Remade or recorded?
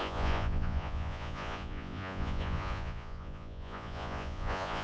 remade